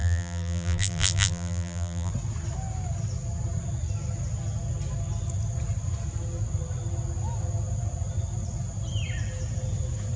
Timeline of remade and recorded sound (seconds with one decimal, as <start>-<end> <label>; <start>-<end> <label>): 0.0-2.1 remade; 2.1-10.2 recorded